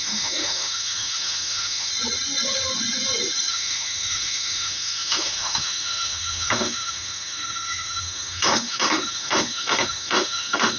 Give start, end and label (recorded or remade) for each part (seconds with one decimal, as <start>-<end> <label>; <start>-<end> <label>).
0.0-1.9 remade; 1.9-3.5 recorded; 3.5-10.8 remade

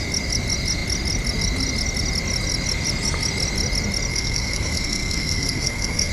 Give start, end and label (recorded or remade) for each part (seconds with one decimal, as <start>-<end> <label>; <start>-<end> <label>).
0.0-4.1 recorded; 4.1-6.1 remade

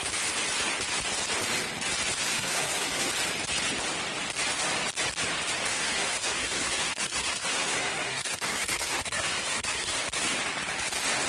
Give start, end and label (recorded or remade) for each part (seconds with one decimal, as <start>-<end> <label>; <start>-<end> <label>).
0.0-2.2 recorded; 2.2-3.1 remade; 3.1-5.7 recorded; 5.7-10.0 remade; 10.0-11.3 recorded

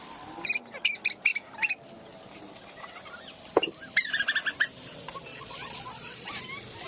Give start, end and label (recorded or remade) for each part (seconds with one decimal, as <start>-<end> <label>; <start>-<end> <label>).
0.0-5.3 recorded; 5.3-6.3 remade; 6.3-6.9 recorded

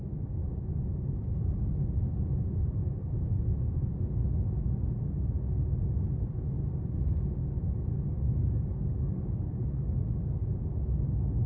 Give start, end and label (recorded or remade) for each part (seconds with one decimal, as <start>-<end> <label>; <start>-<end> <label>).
0.0-8.4 recorded; 8.4-10.5 remade; 10.5-11.5 recorded